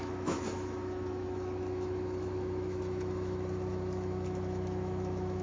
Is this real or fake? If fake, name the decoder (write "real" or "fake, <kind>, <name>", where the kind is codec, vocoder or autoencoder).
fake, autoencoder, DAC-VAE